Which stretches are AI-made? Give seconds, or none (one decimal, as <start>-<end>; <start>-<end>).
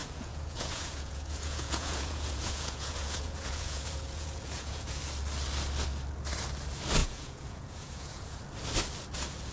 0.0-5.0; 7.0-8.4